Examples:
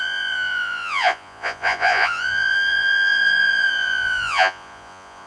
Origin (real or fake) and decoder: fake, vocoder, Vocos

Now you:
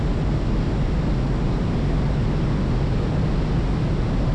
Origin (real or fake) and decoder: real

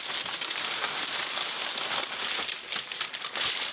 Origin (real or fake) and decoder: real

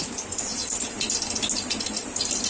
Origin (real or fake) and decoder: real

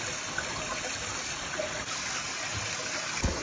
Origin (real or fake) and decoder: real